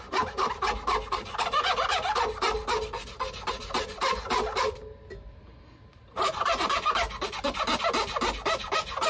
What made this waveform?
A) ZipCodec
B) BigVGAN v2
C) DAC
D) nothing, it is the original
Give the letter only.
D